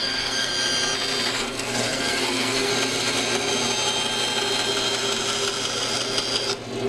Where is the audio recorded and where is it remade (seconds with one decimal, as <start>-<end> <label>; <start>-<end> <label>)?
0.0-0.5 remade; 0.5-1.3 recorded; 1.3-2.7 remade; 2.7-6.9 recorded